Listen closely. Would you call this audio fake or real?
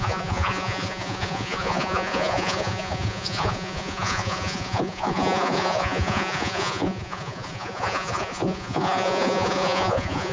fake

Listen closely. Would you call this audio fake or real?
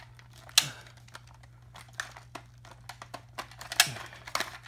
real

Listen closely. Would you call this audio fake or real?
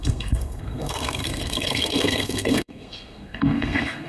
fake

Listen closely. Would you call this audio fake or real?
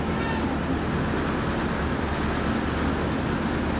real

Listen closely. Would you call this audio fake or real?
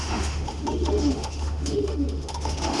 fake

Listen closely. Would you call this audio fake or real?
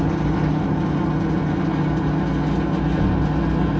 real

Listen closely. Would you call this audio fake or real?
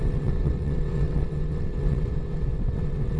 fake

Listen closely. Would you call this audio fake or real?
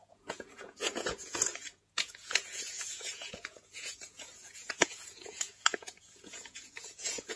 fake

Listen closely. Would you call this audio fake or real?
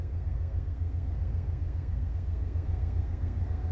fake